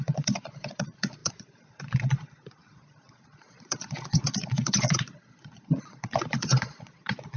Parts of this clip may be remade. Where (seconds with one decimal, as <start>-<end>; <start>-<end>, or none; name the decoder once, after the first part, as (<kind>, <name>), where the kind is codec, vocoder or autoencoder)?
0.0-7.4 (vocoder, Vocos)